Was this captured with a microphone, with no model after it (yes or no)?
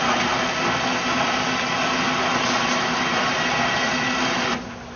yes